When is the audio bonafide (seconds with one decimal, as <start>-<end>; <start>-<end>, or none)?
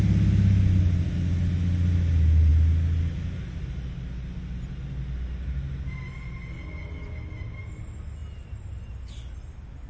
0.0-9.9